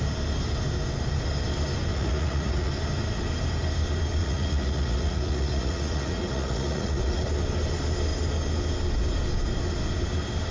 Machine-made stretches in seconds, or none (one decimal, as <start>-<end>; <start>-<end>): 1.9-2.7; 4.2-7.3